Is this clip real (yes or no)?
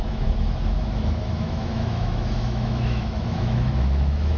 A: no